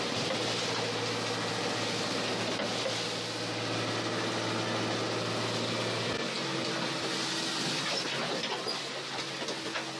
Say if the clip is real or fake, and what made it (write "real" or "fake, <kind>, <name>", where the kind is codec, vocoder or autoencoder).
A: real